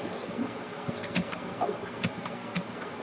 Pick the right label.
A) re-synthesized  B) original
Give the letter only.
A